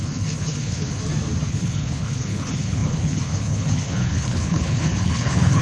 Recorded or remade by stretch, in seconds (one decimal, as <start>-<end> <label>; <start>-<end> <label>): 0.0-1.0 remade; 1.0-1.5 recorded; 1.5-5.6 remade